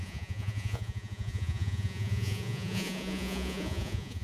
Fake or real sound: fake